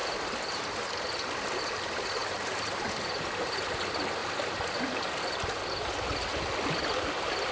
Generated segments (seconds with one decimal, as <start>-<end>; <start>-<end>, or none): none